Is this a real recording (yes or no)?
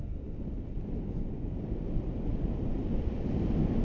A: yes